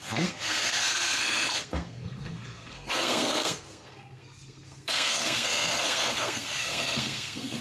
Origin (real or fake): fake